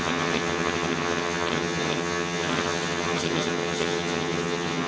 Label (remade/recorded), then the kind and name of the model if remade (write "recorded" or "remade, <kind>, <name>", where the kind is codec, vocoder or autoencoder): remade, vocoder, HiFi-GAN